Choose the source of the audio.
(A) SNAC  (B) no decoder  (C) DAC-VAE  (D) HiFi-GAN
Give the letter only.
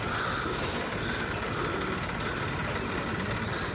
B